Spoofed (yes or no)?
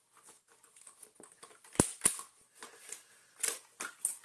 no